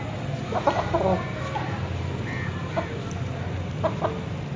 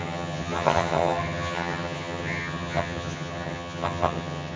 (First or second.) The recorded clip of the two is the first